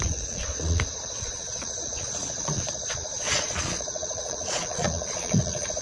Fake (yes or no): yes